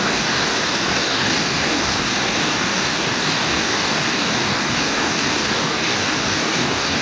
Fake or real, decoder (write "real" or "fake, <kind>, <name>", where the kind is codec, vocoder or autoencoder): fake, codec, DAC